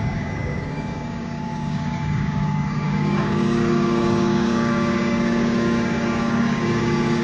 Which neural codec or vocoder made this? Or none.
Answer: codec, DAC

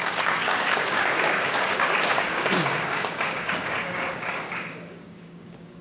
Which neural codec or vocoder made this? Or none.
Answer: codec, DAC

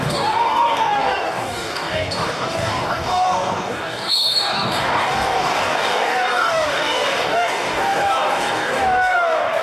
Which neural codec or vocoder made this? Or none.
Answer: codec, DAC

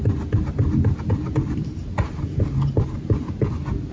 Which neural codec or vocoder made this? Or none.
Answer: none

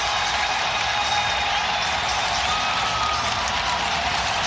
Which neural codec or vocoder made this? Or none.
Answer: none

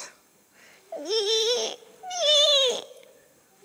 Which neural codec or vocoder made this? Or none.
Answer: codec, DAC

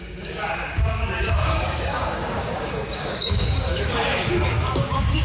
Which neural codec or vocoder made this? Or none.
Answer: codec, DAC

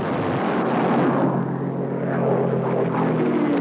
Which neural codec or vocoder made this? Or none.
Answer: none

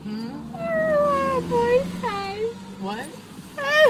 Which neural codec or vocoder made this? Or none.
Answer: none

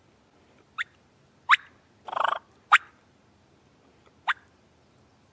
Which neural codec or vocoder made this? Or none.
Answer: none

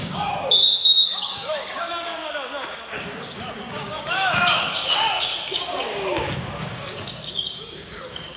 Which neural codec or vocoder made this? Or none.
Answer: codec, DAC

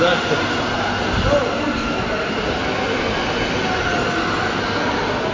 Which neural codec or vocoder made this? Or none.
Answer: none